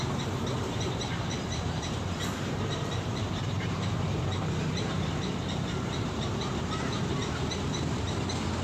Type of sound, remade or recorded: remade